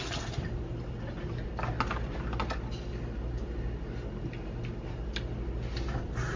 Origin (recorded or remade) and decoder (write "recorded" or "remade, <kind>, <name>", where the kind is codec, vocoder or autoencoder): recorded